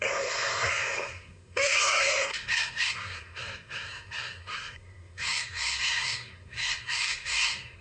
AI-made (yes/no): yes